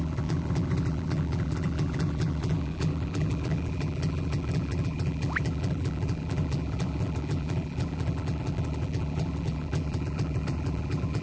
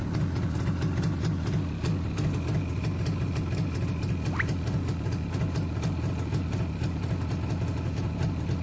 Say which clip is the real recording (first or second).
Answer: second